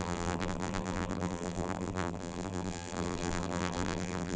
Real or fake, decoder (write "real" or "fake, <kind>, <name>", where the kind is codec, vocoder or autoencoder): fake, vocoder, BigVGAN v2